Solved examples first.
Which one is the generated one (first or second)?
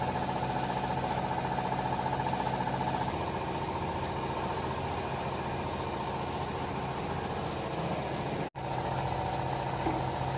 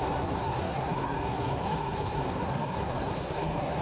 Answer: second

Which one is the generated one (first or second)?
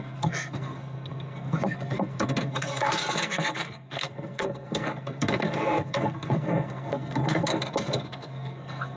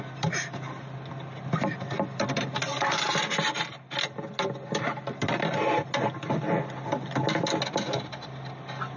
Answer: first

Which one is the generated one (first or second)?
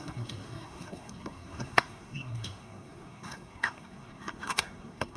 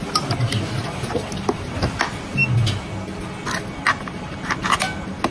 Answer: first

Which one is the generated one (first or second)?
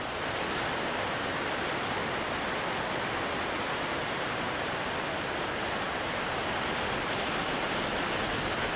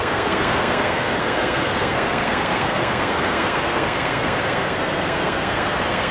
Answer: second